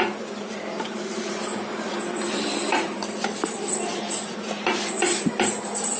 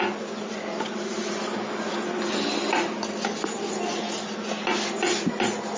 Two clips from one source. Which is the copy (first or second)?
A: first